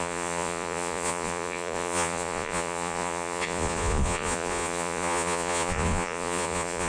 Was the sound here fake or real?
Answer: fake